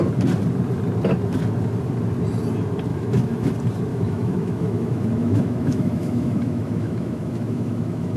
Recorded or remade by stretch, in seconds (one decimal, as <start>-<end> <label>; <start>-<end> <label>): 0.0-2.9 recorded; 2.9-3.5 remade; 3.5-3.9 recorded; 3.9-8.2 remade